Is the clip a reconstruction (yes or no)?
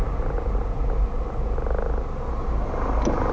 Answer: no